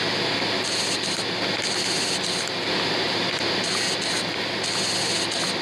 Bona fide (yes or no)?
yes